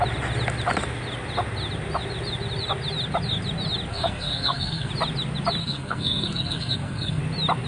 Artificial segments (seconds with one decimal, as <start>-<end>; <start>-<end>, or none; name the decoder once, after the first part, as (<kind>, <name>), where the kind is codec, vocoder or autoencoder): 3.9-4.9 (codec, SNAC); 5.6-7.2